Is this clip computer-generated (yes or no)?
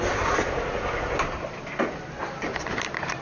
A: no